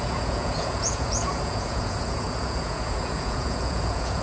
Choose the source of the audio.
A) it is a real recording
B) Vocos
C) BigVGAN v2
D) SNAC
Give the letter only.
B